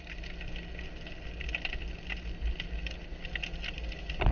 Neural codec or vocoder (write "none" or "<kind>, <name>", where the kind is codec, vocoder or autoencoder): none